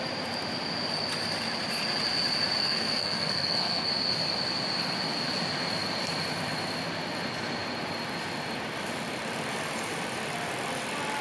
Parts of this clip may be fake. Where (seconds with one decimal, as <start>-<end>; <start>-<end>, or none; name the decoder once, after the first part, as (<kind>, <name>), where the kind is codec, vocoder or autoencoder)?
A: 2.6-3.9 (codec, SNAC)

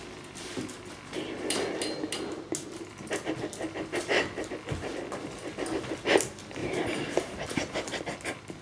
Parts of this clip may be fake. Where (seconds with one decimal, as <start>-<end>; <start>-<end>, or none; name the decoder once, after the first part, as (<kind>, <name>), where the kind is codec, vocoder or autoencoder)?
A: 6.6-8.0 (vocoder, BigVGAN v2)

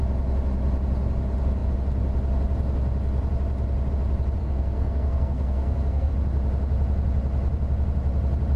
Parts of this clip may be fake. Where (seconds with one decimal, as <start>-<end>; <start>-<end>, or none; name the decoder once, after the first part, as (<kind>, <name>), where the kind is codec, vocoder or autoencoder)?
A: 4.4-6.1 (codec, SNAC)